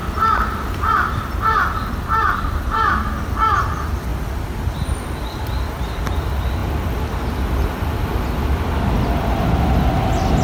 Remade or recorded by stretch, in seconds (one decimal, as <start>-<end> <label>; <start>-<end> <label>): 0.0-10.4 recorded